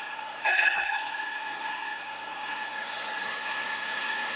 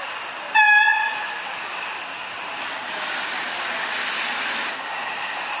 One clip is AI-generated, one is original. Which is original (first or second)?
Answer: second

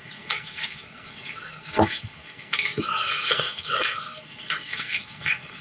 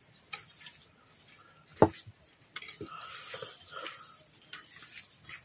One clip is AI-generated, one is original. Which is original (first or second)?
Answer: second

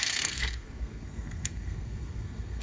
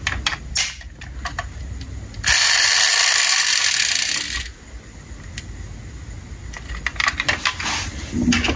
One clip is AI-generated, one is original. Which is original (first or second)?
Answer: second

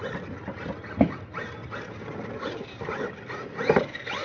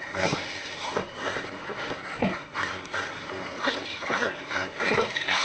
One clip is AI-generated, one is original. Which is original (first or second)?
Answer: first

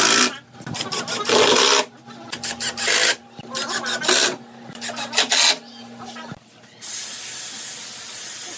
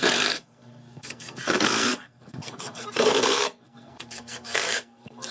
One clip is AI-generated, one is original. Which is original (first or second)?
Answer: first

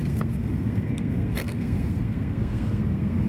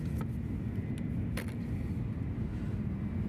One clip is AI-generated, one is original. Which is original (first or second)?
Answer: second